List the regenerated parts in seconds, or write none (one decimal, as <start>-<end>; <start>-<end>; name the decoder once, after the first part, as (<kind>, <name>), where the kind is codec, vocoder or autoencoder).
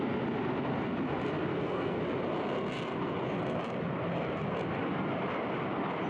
1.5-2.0 (codec, SNAC)